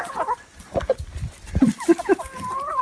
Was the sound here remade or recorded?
recorded